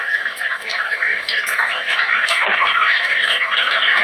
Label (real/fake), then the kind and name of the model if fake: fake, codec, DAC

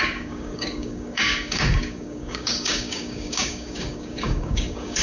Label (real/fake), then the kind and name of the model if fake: fake, codec, DAC